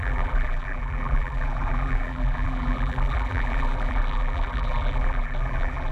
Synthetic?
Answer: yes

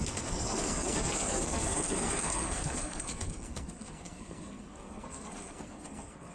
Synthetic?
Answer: yes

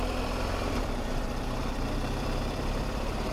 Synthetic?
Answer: yes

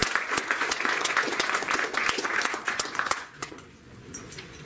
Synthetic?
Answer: yes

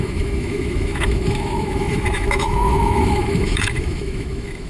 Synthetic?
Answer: yes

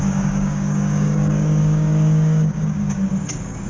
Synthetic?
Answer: yes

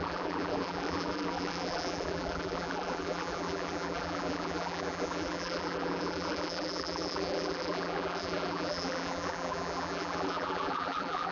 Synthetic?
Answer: yes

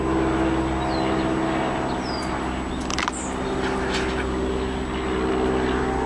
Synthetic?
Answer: no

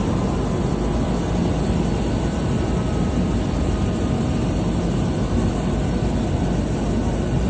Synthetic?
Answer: no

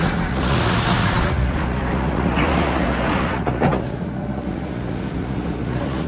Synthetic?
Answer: yes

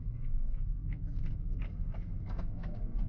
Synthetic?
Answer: yes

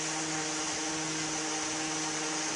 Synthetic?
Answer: no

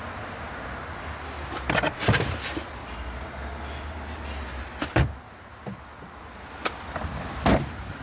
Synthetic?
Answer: no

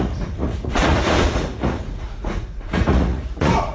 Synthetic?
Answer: yes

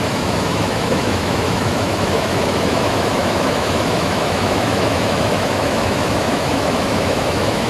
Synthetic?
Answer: yes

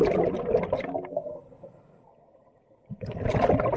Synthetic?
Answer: no